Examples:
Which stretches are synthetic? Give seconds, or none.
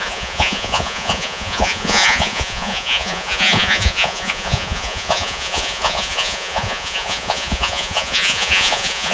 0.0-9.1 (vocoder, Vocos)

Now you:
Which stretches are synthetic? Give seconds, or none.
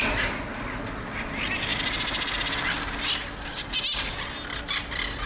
none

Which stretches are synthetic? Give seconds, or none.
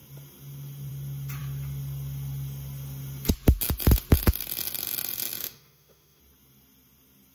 5.4-6.2 (autoencoder, DAC-VAE)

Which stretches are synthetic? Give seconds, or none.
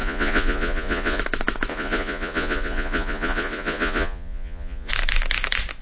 0.0-1.2 (vocoder, Vocos); 1.7-4.9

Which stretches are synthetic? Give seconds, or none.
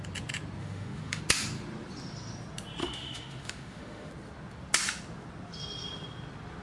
0.6-1.2 (autoencoder, DAC-VAE); 2.8-4.1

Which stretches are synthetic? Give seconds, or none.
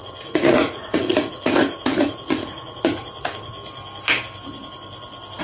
0.0-3.6 (vocoder, Vocos)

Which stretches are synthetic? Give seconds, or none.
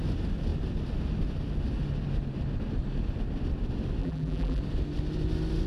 4.0-4.6 (vocoder, BigVGAN v2)